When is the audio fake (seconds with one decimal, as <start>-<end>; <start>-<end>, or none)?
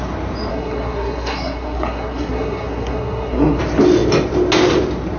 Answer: 0.5-3.6